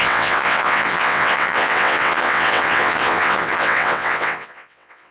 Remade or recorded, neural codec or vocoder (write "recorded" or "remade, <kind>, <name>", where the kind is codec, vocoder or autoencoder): remade, vocoder, WaveNeXt